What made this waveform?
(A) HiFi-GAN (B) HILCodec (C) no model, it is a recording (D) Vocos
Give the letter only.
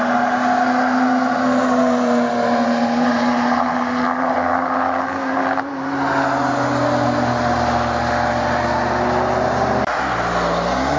C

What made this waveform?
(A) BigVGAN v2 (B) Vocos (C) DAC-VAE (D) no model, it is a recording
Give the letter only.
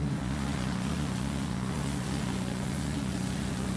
B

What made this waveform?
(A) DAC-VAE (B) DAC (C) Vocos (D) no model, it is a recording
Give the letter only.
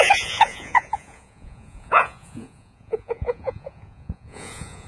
C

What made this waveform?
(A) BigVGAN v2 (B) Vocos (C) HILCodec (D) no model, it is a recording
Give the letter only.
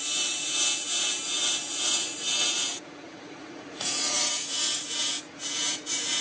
B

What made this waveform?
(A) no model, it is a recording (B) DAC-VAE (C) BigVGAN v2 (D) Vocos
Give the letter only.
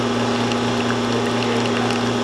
A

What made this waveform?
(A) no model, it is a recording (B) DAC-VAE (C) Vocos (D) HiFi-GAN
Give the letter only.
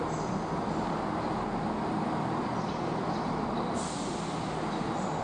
A